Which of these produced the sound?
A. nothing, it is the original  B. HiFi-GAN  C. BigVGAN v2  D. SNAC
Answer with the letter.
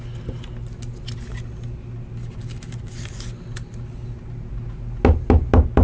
A